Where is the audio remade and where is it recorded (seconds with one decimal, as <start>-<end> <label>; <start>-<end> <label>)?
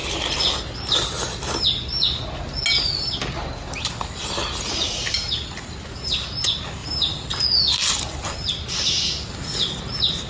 0.0-10.3 recorded